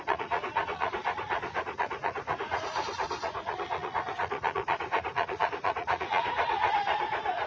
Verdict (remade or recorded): remade